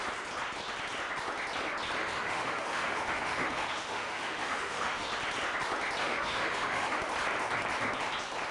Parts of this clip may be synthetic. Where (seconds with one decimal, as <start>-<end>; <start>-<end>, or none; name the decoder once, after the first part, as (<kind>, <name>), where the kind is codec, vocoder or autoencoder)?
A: 2.0-5.1 (autoencoder, DAC-VAE); 6.0-7.0